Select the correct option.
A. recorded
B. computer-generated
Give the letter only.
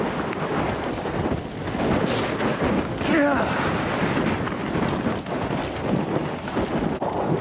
A